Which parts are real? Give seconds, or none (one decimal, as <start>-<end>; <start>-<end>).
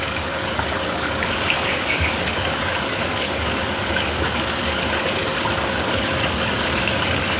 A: none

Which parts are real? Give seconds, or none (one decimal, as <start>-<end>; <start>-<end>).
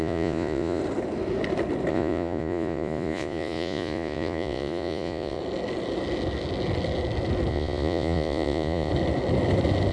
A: 0.8-1.9; 5.4-7.5; 8.9-9.9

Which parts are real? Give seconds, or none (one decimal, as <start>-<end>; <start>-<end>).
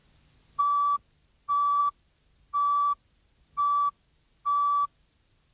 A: 0.0-5.5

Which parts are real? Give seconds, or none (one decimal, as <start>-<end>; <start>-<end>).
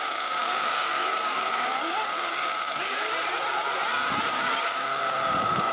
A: 3.1-4.3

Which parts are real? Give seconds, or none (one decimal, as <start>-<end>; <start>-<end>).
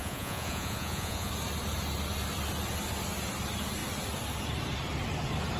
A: 1.3-5.6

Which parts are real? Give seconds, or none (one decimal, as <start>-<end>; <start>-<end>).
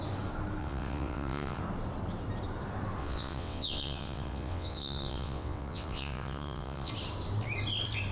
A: 0.0-0.6; 1.6-3.0; 6.9-8.1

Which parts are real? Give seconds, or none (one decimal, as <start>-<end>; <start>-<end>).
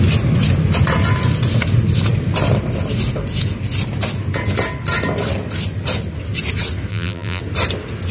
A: 0.0-6.9; 7.4-8.1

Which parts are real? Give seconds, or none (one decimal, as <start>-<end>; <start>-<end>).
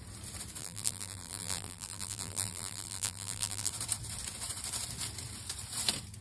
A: 0.0-0.6; 3.7-6.2